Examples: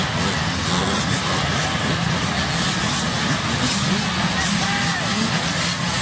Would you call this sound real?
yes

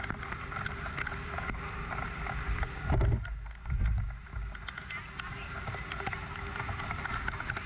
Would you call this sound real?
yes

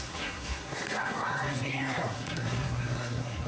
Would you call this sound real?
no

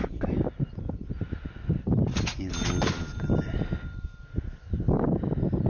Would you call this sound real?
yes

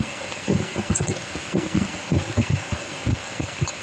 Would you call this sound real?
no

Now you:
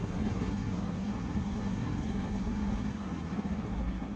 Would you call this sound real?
no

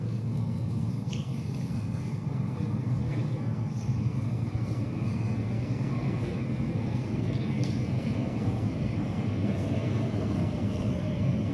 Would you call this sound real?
no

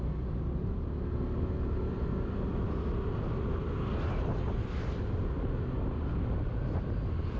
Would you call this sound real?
yes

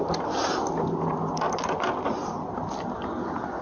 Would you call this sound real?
yes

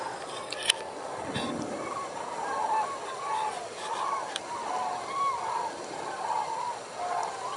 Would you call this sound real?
yes